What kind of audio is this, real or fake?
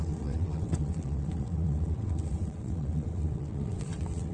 fake